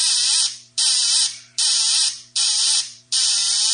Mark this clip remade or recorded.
remade